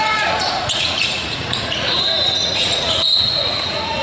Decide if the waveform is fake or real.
fake